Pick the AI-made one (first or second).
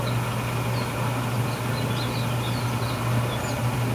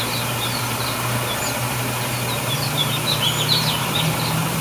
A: second